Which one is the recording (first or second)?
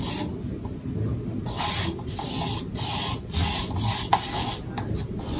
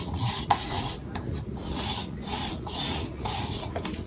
first